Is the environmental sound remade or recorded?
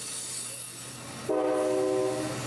recorded